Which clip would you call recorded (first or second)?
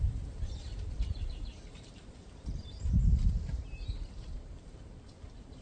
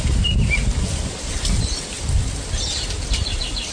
second